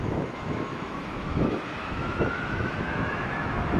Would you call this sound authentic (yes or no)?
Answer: no